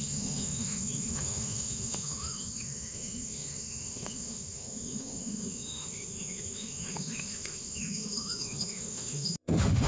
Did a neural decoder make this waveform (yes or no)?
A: yes